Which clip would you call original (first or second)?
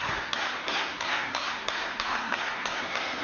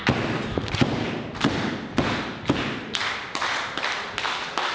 second